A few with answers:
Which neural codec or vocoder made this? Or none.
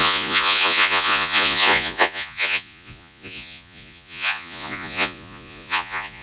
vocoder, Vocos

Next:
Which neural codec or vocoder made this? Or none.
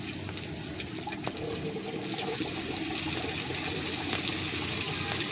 none